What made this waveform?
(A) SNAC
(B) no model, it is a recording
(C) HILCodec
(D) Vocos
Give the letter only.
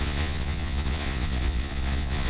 D